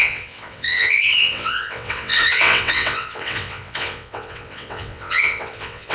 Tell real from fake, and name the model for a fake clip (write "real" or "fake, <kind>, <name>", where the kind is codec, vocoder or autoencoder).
fake, vocoder, WaveNeXt